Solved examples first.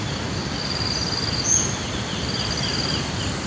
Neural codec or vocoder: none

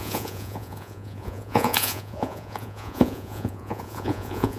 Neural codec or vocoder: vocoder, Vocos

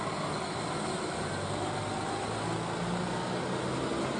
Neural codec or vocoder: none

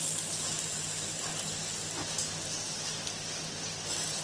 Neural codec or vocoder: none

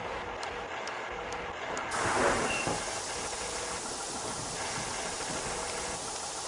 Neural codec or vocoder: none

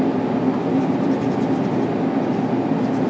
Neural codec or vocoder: none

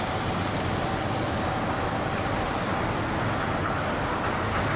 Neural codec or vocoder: none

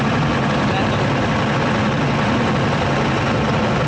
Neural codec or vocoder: none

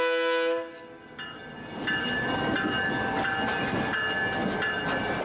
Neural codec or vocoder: none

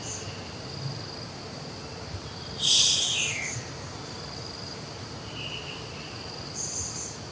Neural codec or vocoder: none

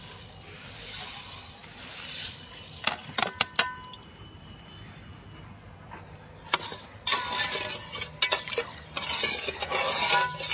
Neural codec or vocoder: none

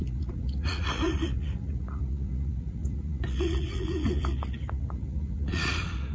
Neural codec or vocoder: vocoder, Vocos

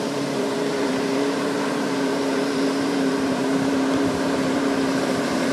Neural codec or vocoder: vocoder, BigVGAN v2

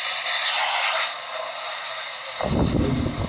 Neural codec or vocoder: none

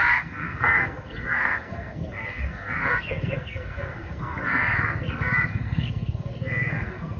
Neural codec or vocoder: codec, SNAC